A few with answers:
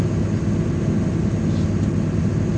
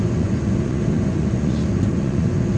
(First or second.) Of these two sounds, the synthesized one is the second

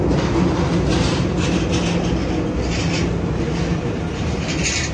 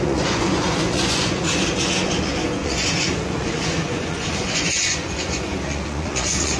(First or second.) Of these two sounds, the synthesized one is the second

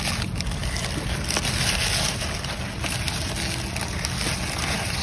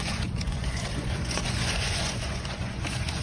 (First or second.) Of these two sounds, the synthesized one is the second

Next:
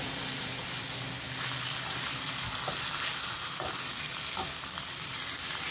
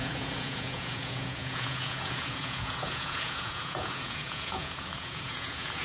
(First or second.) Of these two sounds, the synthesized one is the second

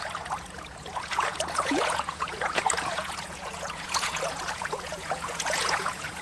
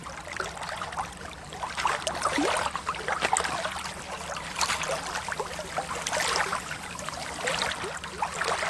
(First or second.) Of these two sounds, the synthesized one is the first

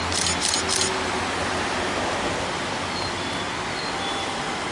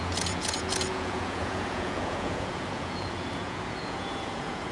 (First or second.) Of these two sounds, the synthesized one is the second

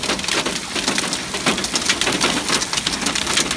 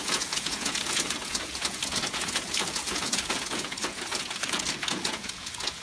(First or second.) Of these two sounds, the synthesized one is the second